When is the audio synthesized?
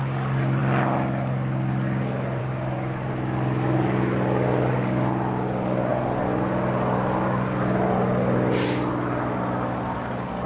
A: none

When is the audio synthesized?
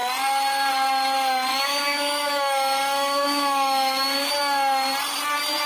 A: 1.5-4.3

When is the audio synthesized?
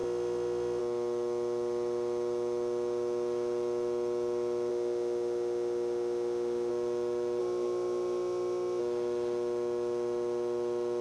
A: 0.0-0.8; 4.7-6.7; 7.4-8.8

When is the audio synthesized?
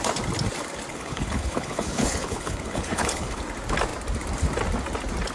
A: 0.9-3.4